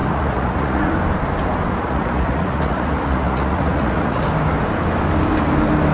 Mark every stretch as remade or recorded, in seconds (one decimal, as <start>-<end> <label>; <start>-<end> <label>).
0.0-0.9 remade; 0.9-1.8 recorded; 1.8-4.2 remade; 4.2-5.9 recorded